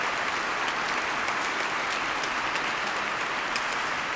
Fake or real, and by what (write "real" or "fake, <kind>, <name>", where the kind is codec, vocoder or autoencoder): real